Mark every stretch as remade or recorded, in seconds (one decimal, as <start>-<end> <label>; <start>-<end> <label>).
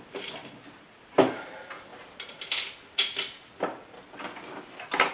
0.0-5.1 recorded